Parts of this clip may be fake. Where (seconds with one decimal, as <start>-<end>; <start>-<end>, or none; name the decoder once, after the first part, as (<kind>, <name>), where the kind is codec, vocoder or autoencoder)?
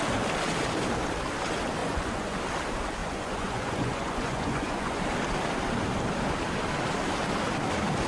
1.8-2.4 (vocoder, Vocos); 3.0-5.0